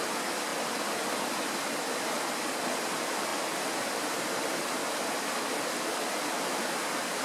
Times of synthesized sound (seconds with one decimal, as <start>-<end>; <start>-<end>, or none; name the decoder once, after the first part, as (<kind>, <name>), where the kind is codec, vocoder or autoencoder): none